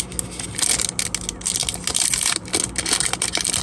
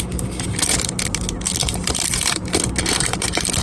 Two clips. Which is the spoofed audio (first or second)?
second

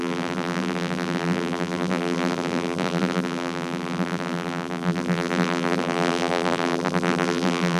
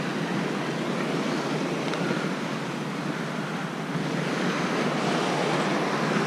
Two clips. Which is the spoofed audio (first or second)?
first